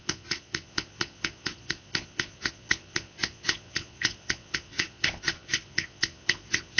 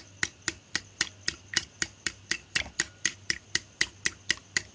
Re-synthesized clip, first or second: first